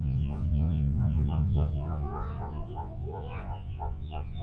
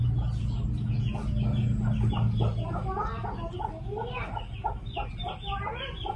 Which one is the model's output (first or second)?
first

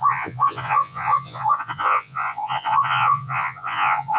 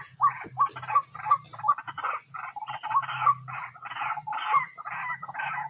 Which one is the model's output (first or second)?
first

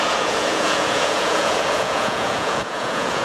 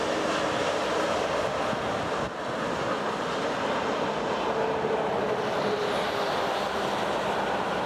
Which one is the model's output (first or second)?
first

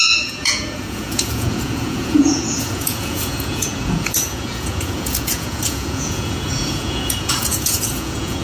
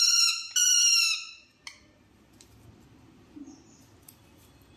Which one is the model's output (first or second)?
first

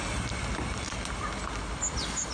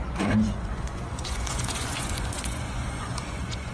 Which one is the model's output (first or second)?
second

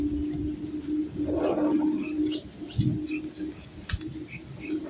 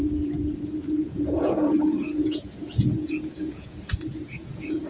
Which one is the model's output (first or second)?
second